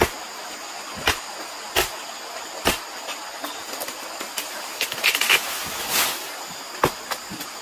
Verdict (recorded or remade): recorded